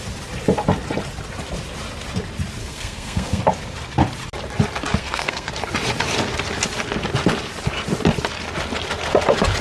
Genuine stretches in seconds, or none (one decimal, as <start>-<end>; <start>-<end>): 0.0-2.6; 3.4-5.0; 5.5-9.6